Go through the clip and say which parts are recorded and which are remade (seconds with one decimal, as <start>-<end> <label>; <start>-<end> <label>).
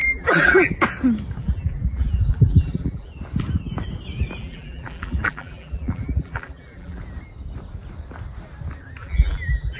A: 0.0-0.7 remade; 0.7-1.4 recorded; 1.4-3.1 remade; 3.1-4.4 recorded; 4.4-7.0 remade; 7.0-9.0 recorded; 9.0-9.8 remade